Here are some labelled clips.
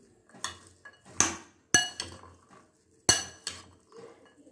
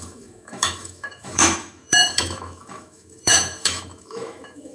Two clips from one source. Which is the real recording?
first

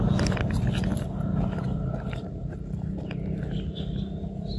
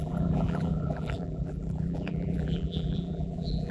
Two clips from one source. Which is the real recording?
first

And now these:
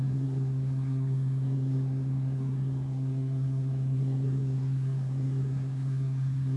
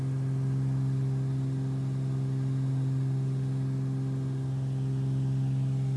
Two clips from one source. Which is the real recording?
second